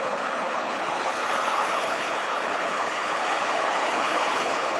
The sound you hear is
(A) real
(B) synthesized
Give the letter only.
B